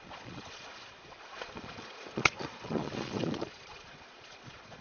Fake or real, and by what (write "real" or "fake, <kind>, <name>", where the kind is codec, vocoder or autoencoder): fake, vocoder, Vocos